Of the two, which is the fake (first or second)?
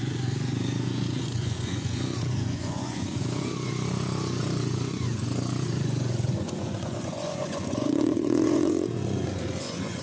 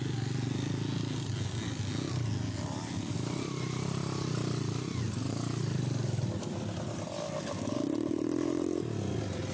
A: first